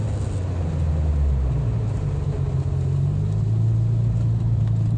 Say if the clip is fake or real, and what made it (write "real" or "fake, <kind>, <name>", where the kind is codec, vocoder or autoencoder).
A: real